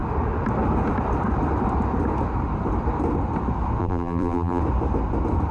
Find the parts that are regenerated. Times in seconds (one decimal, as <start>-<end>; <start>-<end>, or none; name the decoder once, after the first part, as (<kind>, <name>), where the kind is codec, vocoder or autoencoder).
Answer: 3.8-4.6 (vocoder, BigVGAN v2)